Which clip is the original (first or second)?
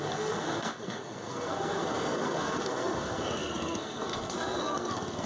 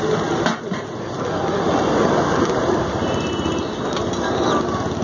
second